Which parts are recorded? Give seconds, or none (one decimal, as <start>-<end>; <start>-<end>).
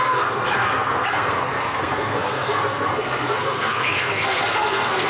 none